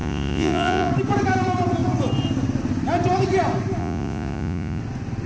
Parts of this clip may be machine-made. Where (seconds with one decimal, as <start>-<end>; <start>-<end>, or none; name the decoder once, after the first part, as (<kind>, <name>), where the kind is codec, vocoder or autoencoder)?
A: 0.0-0.9 (vocoder, Vocos); 3.8-4.8